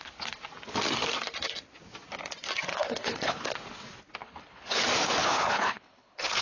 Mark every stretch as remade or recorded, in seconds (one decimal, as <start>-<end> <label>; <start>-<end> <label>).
0.0-2.7 recorded; 2.7-3.5 remade; 3.5-4.2 recorded; 4.2-4.8 remade; 4.8-5.2 recorded; 5.2-6.4 remade